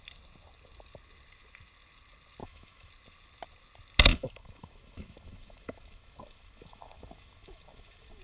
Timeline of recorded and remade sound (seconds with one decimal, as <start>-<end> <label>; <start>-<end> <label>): 0.0-2.4 recorded; 2.4-2.9 remade; 2.9-4.1 recorded; 4.1-8.2 remade